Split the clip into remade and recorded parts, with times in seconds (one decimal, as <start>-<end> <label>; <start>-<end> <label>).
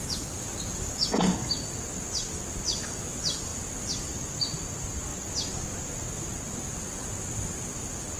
0.0-8.2 recorded